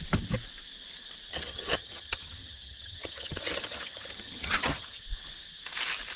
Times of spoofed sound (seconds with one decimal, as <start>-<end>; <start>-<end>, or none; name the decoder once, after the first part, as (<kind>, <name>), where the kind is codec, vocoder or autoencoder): 1.3-5.0 (vocoder, HiFi-GAN)